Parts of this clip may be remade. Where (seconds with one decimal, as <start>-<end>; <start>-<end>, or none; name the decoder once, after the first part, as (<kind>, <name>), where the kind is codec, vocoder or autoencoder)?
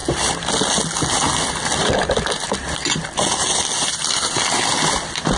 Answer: none